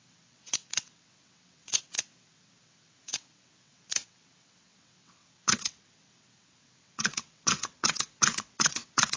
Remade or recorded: remade